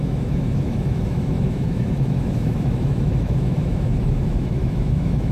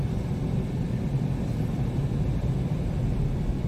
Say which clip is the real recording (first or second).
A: second